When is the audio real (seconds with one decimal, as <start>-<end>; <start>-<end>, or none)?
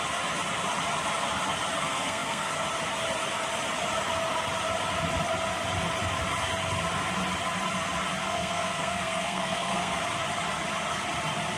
0.0-1.8; 2.5-8.2; 10.0-11.6